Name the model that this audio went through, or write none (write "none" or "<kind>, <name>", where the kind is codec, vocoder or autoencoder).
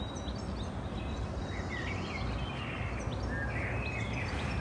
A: none